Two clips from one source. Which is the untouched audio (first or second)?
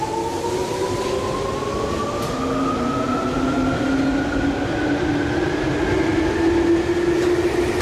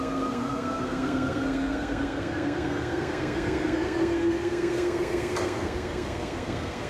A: first